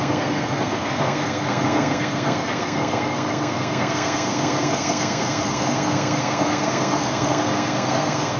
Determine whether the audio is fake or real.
fake